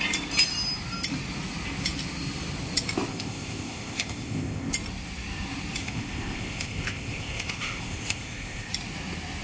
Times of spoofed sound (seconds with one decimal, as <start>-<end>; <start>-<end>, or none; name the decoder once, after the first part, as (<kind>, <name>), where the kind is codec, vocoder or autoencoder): 3.1-4.7 (codec, ZipCodec); 5.8-8.7